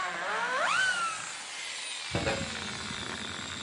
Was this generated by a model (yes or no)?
no